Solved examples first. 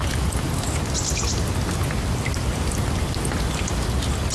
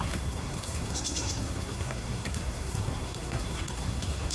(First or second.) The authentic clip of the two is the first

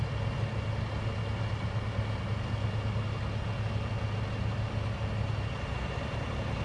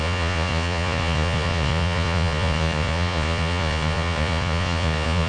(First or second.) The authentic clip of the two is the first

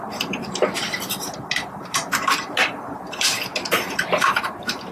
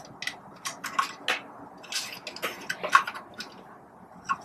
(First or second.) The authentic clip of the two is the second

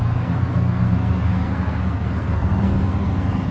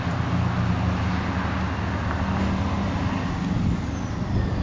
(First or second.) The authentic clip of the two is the second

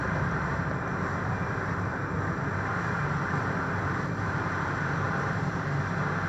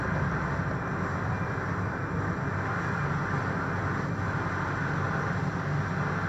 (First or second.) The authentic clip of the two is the second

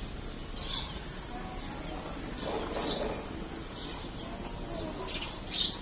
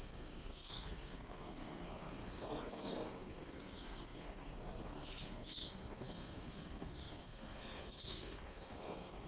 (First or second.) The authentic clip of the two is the first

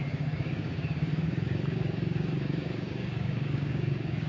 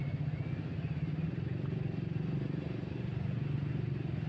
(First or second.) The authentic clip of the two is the second